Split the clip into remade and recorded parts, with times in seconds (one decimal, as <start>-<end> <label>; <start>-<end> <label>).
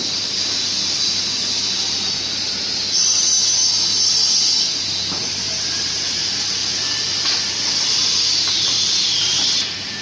0.0-5.2 recorded; 5.2-10.0 remade